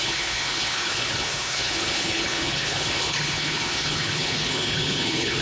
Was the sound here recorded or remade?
remade